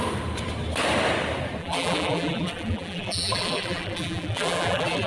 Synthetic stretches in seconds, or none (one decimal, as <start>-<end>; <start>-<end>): 1.6-5.1